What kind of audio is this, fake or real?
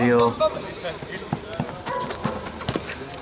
real